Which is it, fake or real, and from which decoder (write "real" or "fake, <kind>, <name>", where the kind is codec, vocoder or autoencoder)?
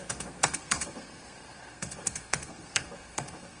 fake, codec, SNAC